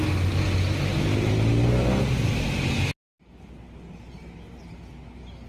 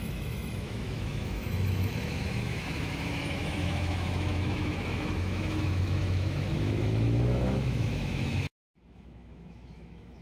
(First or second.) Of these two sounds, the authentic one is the first